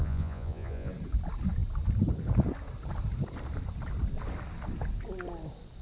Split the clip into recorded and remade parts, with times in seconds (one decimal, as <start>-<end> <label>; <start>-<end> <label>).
0.0-0.9 remade; 0.9-5.8 recorded